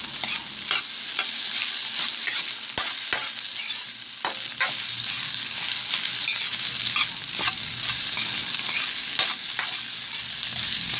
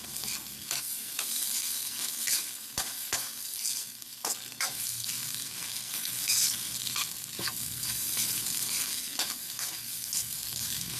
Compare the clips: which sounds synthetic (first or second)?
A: second